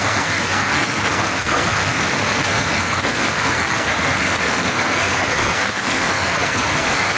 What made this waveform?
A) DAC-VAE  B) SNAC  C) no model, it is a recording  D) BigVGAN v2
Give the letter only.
B